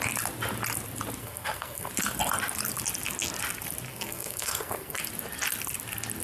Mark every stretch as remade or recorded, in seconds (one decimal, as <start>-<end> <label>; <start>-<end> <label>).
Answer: 0.0-1.2 recorded; 1.2-1.9 remade; 1.9-3.9 recorded; 3.9-5.0 remade; 5.0-6.2 recorded